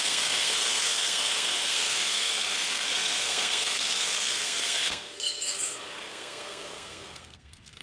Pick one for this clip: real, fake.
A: fake